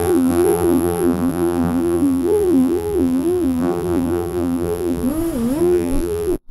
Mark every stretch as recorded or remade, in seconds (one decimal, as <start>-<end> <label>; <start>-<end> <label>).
0.0-5.1 remade; 5.1-5.6 recorded; 5.6-6.5 remade